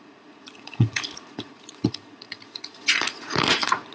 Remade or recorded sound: remade